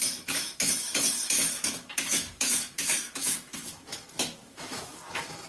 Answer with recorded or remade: remade